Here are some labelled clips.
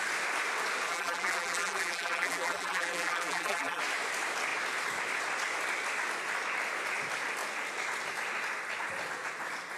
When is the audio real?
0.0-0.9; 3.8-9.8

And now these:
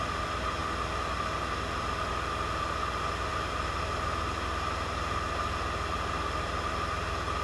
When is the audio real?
0.0-7.4